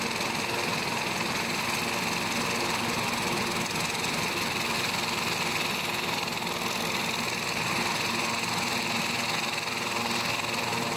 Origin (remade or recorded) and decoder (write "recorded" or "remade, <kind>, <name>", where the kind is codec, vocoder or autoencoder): recorded